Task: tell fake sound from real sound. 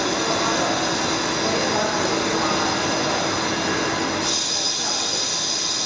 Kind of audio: real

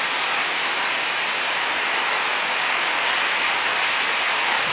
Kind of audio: real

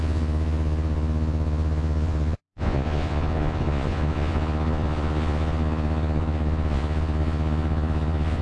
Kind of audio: fake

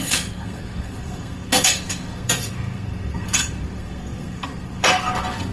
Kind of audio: fake